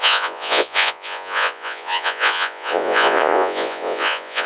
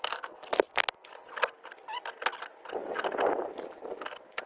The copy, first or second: first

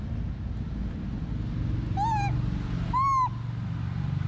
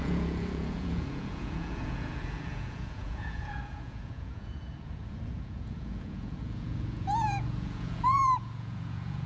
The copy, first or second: second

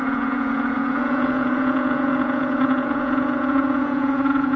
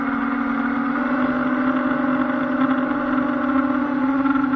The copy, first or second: first